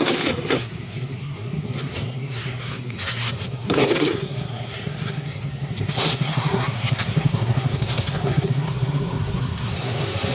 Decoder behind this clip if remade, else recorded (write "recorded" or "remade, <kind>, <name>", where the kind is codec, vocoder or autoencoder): remade, codec, SNAC